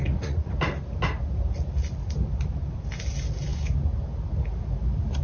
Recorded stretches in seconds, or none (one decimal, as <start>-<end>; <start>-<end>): 0.5-5.2